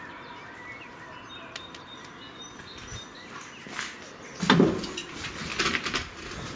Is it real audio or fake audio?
real